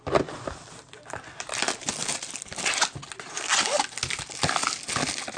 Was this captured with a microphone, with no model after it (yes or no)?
yes